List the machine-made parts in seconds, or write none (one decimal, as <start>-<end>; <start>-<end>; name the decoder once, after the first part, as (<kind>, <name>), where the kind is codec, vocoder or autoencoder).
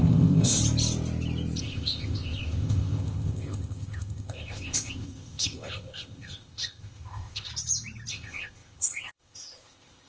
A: 0.0-0.6 (codec, ZipCodec); 1.6-7.5; 8.1-10.1